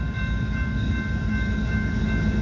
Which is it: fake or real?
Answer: real